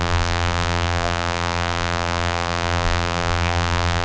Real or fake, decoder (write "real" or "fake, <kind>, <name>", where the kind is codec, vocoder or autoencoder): fake, vocoder, BigVGAN v2